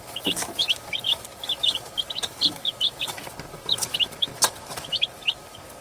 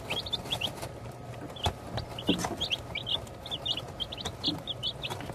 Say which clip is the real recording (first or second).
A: second